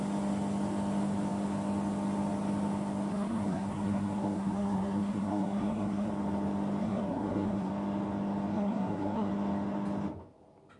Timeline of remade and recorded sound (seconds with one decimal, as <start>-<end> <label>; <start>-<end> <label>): 0.0-3.1 recorded; 3.1-6.1 remade; 6.1-6.8 recorded; 6.8-7.7 remade; 7.7-8.5 recorded; 8.5-9.3 remade; 9.3-10.8 recorded

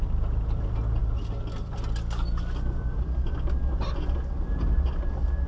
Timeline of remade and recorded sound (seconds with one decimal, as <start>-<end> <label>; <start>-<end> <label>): 0.0-5.5 recorded